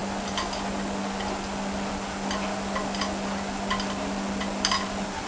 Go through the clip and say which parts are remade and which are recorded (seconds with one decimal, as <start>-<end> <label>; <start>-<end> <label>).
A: 0.0-5.3 recorded